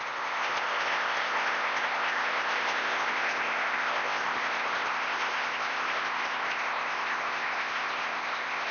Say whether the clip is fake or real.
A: fake